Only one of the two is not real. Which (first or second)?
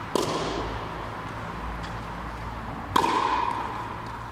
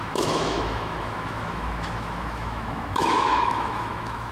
second